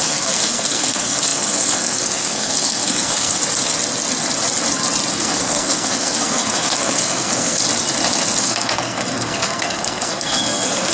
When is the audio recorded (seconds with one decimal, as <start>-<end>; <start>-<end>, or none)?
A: 3.4-5.1; 7.6-8.4